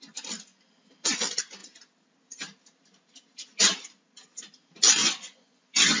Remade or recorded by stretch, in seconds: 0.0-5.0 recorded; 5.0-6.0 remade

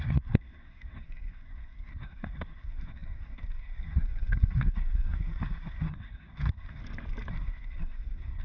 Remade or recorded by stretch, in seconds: 0.0-6.8 remade; 6.8-7.3 recorded; 7.3-8.4 remade

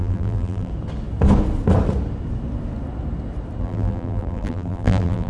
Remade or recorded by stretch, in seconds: 0.0-0.7 remade; 0.7-3.6 recorded; 3.6-5.3 remade

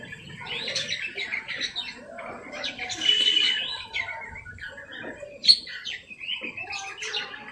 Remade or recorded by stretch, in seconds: 0.0-5.4 recorded; 5.4-6.6 remade; 6.6-7.5 recorded